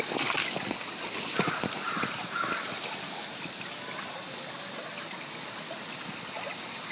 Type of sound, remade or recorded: recorded